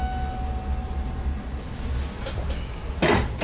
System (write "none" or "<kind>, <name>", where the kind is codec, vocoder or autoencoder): none